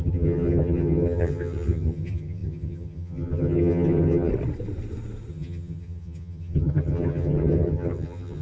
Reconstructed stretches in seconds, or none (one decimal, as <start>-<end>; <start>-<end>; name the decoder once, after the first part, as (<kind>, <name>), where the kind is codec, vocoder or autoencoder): 0.0-4.3 (vocoder, HiFi-GAN); 5.3-8.4